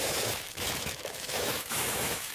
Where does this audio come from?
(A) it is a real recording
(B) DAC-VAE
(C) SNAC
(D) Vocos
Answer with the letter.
B